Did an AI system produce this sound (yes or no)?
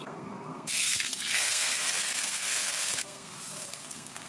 yes